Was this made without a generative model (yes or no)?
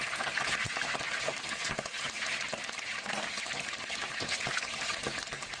yes